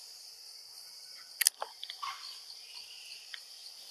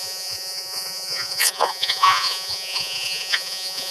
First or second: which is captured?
first